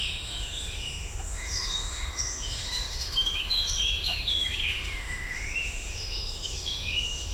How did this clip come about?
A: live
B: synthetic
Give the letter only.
B